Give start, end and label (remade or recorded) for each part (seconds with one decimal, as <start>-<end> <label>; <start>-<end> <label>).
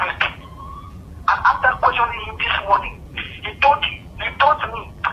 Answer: 0.0-5.1 remade